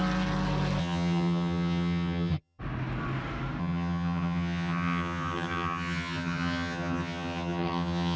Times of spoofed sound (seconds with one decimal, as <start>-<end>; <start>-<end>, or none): 0.8-2.6; 3.6-8.2